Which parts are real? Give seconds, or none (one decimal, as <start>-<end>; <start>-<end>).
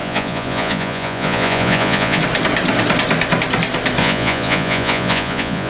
2.2-4.0